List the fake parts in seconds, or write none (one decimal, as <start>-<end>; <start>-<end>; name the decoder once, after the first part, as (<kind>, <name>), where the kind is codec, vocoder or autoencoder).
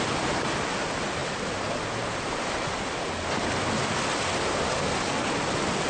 none